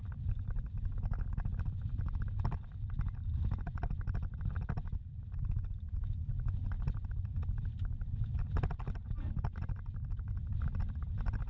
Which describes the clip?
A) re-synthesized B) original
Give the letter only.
A